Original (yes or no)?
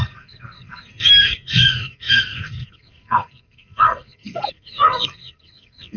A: no